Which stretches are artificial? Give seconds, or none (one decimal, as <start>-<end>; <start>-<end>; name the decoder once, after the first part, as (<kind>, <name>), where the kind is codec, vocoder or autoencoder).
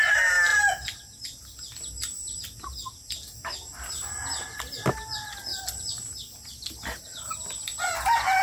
none